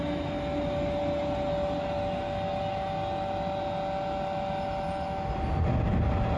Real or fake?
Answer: real